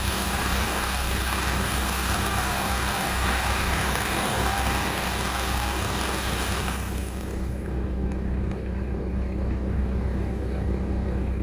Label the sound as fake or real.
fake